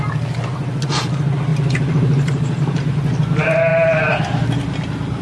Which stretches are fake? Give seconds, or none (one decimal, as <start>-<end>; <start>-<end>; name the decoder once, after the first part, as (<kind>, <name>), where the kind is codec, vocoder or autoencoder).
1.5-3.0 (vocoder, BigVGAN v2); 3.7-4.3